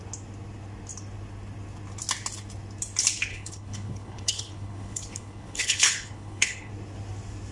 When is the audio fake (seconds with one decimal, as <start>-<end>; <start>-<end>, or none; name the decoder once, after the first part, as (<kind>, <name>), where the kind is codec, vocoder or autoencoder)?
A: 3.3-6.7 (codec, HILCodec)